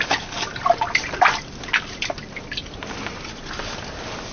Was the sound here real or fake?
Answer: real